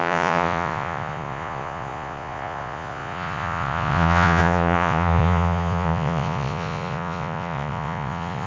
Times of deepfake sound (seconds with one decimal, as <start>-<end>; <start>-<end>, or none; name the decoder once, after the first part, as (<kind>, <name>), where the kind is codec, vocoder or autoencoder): 0.0-8.5 (vocoder, Vocos)